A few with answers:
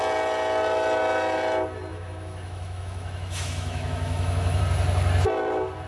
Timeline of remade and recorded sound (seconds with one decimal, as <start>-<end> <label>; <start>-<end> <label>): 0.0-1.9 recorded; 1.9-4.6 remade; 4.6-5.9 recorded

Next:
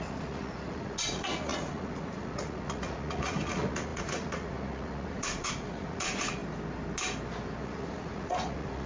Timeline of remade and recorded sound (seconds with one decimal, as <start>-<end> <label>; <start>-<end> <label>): 0.0-6.4 remade; 6.4-7.6 recorded; 7.6-8.9 remade

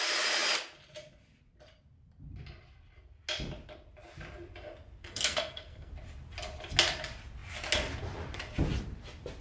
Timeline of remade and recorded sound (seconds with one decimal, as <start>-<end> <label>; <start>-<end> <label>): 0.0-5.0 recorded; 5.0-5.9 remade; 5.9-9.4 recorded

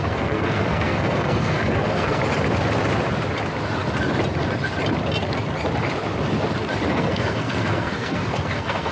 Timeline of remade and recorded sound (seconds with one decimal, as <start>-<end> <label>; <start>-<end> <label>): 0.0-2.2 remade; 2.2-6.9 recorded; 6.9-8.9 remade

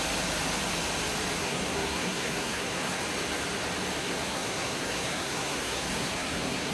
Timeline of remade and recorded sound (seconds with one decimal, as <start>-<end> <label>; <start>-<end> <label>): 0.0-1.4 recorded; 1.4-3.0 remade; 3.0-4.0 recorded; 4.0-6.7 remade

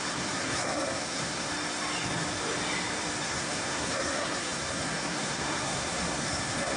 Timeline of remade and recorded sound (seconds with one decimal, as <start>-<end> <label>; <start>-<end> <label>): 0.0-1.5 remade; 1.5-3.2 recorded; 3.2-6.8 remade

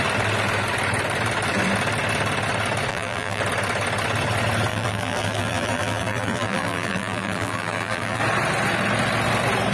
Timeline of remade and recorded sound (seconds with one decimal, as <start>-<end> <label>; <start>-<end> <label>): 0.0-2.9 recorded; 2.9-3.4 remade; 3.4-4.7 recorded; 4.7-8.2 remade; 8.2-9.7 recorded

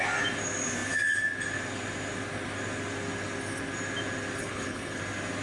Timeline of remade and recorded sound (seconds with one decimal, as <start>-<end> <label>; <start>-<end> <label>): 0.0-4.4 recorded; 4.4-5.0 remade; 5.0-5.4 recorded